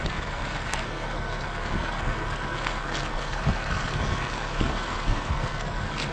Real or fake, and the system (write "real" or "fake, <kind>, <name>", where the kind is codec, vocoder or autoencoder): fake, codec, SNAC